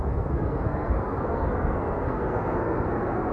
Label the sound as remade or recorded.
remade